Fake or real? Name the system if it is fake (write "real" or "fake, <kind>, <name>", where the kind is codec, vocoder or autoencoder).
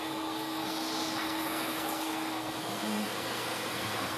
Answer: fake, codec, SNAC